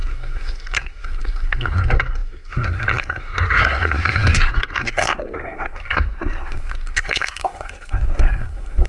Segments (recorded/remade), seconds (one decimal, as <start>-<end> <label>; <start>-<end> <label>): 0.0-8.9 remade